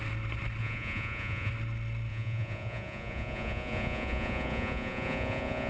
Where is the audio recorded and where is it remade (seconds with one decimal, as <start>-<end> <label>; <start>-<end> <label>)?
0.0-0.6 recorded; 0.6-1.5 remade; 1.5-2.1 recorded; 2.1-5.7 remade